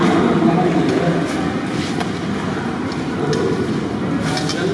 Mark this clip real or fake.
real